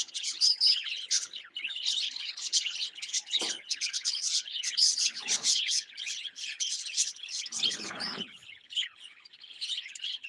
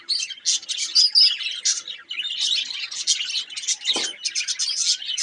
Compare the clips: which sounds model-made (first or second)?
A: first